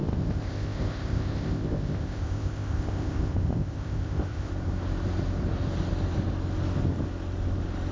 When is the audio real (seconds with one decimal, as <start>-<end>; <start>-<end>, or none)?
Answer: 4.5-7.9